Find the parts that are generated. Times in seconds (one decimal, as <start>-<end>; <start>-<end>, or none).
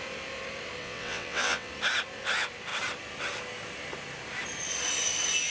0.8-1.7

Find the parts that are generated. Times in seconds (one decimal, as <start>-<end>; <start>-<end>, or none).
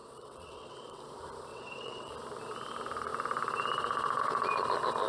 0.0-1.0; 1.5-2.1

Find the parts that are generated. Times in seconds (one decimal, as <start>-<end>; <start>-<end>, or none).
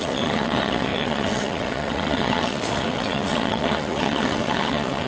0.0-5.1